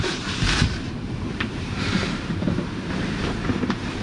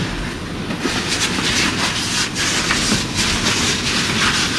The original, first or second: second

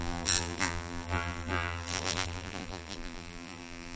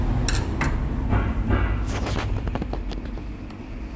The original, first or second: second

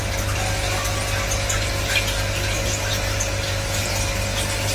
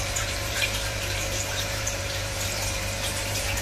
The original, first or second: first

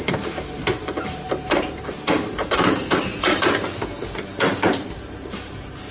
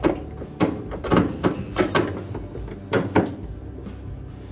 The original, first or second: second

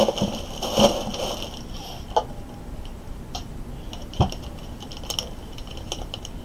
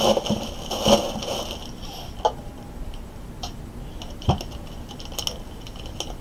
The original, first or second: second